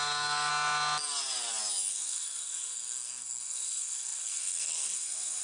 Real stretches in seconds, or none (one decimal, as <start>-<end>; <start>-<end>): 0.5-1.9